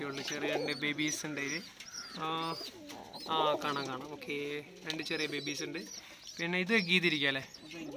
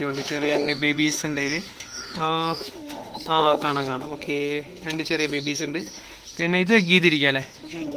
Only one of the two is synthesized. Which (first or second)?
second